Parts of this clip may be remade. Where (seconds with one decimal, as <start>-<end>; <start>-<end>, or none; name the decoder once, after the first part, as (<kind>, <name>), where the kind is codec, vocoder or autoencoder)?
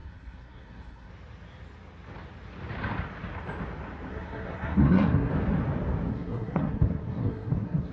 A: 0.0-1.1 (codec, SNAC); 4.1-5.3; 6.1-7.9